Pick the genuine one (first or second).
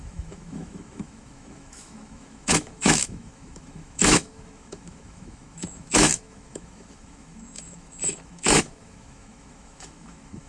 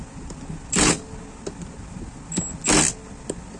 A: second